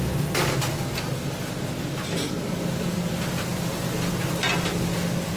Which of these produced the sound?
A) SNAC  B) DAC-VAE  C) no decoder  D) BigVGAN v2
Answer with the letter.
C